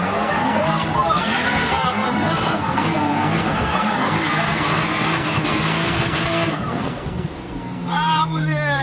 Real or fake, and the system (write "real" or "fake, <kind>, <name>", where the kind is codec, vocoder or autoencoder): fake, codec, SNAC